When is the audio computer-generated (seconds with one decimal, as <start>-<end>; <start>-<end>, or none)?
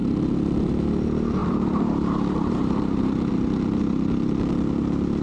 1.4-3.3